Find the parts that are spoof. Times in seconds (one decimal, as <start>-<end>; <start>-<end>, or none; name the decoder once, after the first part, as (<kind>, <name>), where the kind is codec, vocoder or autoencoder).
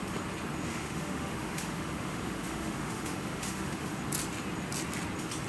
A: 0.7-4.0 (autoencoder, DAC-VAE)